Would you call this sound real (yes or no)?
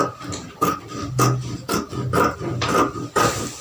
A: no